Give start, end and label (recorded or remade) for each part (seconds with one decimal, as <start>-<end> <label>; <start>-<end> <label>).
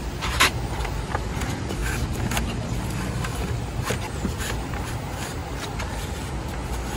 0.0-5.4 remade; 5.4-7.0 recorded